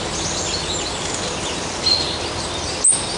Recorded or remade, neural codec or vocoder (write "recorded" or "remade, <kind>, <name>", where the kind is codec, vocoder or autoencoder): recorded